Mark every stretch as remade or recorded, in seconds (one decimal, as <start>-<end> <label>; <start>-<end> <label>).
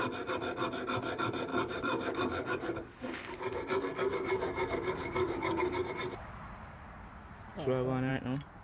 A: 0.0-1.5 recorded; 1.5-5.9 remade; 5.9-8.6 recorded